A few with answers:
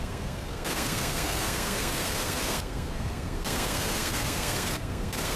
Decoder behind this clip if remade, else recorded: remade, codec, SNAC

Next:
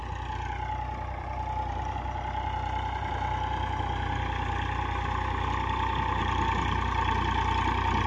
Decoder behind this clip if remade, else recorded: recorded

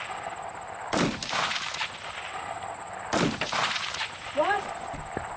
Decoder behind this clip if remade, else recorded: recorded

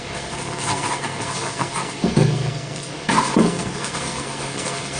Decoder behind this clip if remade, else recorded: remade, codec, SNAC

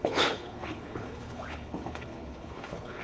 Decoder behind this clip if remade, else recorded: remade, codec, HILCodec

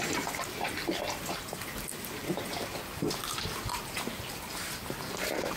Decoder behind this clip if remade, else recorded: recorded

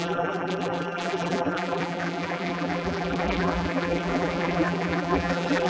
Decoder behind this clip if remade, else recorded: remade, vocoder, BigVGAN v2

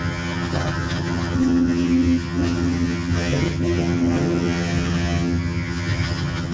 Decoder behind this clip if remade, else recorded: remade, vocoder, HiFi-GAN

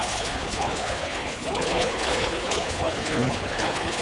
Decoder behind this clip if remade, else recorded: remade, codec, HILCodec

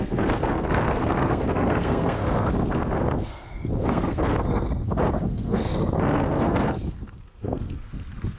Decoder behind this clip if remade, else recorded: remade, codec, SNAC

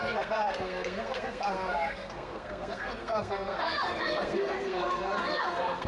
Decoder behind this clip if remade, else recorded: remade, codec, SNAC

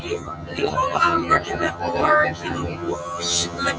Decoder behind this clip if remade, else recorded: remade, vocoder, HiFi-GAN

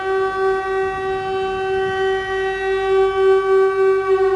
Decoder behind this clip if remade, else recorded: recorded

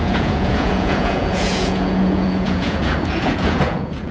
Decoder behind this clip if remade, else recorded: remade, vocoder, Vocos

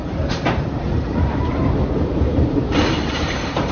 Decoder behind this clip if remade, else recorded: remade, vocoder, BigVGAN v2